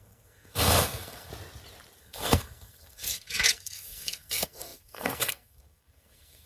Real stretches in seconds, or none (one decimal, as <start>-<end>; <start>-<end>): 1.3-2.0